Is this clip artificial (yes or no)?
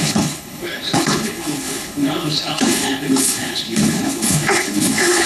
yes